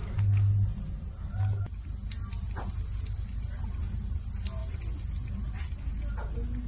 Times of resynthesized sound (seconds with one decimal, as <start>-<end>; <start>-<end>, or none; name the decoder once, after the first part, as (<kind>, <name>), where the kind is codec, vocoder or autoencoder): none